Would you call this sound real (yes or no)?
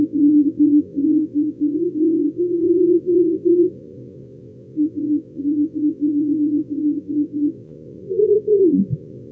no